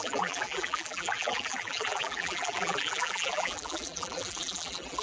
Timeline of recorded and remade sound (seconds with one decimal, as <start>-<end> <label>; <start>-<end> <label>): 0.0-5.0 remade